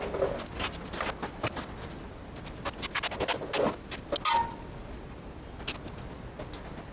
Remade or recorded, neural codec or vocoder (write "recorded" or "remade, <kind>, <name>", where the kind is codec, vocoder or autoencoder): recorded